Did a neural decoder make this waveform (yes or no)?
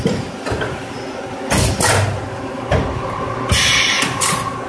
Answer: no